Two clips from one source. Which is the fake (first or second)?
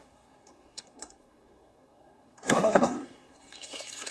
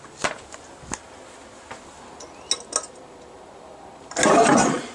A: first